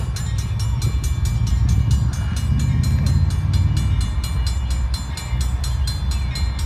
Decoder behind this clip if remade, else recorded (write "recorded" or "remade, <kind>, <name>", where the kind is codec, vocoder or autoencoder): recorded